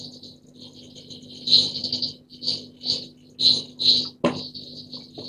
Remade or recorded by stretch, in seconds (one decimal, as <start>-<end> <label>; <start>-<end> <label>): 0.0-5.3 recorded